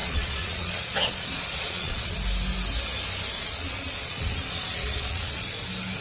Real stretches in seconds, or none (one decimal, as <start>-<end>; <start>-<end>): 2.1-3.4; 5.6-6.0